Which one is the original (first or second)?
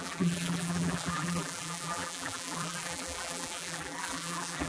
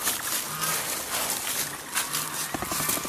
second